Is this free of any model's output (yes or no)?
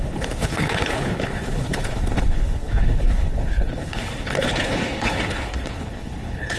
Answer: no